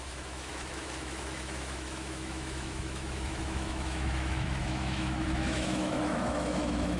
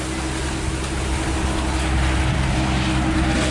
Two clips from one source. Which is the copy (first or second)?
first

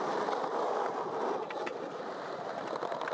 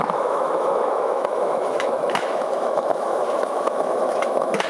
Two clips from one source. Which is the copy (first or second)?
second